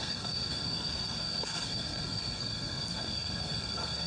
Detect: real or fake fake